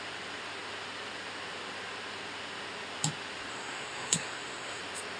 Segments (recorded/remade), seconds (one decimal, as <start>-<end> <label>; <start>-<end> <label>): 0.0-3.5 recorded; 3.5-4.8 remade; 4.8-5.2 recorded